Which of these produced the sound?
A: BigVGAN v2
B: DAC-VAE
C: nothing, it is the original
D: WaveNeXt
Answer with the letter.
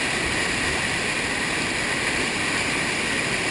C